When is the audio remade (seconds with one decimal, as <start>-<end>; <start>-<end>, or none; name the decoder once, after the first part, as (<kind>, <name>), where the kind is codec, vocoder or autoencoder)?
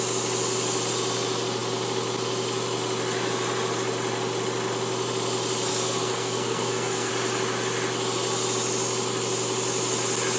5.7-7.1 (codec, SNAC)